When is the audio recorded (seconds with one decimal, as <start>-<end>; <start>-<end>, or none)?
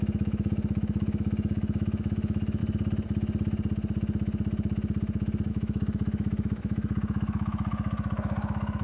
2.6-5.5